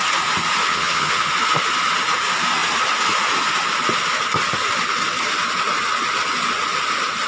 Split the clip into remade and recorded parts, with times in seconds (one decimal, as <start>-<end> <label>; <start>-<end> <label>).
0.0-0.6 recorded; 0.6-1.3 remade; 1.3-7.3 recorded